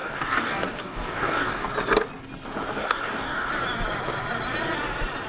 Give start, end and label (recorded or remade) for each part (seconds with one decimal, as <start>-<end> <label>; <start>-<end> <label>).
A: 0.0-1.7 remade; 1.7-2.7 recorded; 2.7-3.5 remade; 3.5-5.3 recorded